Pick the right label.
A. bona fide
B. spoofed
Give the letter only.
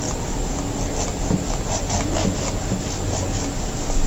A